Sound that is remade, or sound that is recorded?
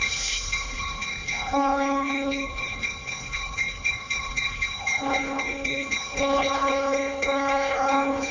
remade